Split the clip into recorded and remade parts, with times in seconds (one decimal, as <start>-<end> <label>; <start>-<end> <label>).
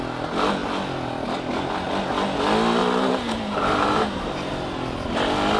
0.0-2.8 recorded; 2.8-4.5 remade; 4.5-5.6 recorded